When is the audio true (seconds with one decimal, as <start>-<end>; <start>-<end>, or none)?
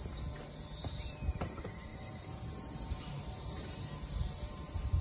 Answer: 0.0-0.8; 1.5-1.9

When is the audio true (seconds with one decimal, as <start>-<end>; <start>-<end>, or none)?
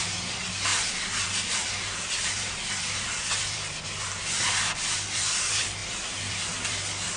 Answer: none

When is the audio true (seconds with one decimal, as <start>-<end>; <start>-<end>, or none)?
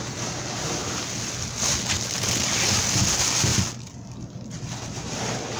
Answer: 0.0-5.6